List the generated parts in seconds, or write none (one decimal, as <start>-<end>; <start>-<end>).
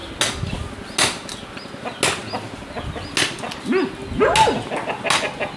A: none